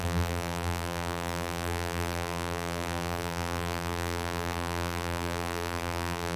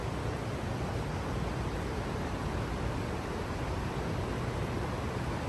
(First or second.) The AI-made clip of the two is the first